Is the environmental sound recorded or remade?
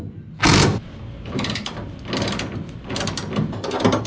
recorded